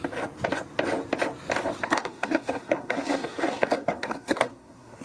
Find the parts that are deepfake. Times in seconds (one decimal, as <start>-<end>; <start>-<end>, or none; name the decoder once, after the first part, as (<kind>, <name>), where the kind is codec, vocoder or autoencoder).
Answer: 1.8-5.0 (codec, SNAC)

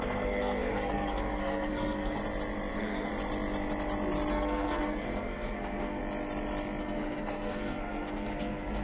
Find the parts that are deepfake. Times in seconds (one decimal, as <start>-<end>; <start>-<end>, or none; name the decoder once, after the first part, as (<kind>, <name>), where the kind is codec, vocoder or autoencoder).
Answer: 0.0-2.2 (codec, SNAC); 2.7-3.1; 4.3-6.0; 6.8-8.8